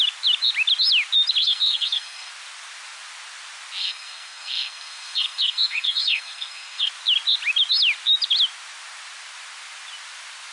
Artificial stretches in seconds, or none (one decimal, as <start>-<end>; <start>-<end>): 1.4-2.3; 3.8-6.9